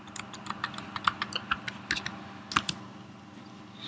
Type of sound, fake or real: real